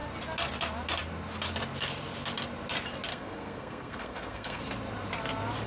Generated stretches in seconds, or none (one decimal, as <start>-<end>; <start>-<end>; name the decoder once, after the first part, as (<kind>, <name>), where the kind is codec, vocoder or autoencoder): 3.1-4.6 (codec, SNAC)